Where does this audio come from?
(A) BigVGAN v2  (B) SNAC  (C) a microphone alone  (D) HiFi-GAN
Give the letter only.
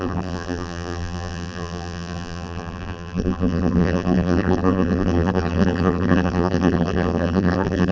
A